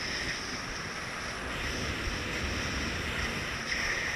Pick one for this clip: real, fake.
real